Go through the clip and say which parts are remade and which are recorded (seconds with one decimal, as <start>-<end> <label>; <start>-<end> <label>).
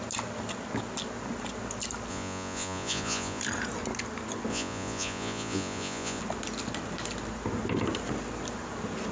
0.0-2.1 recorded; 2.1-3.4 remade; 3.4-4.5 recorded; 4.5-6.2 remade; 6.2-9.1 recorded